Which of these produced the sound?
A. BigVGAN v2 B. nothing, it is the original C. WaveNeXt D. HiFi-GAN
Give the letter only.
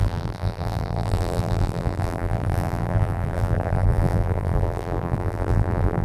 A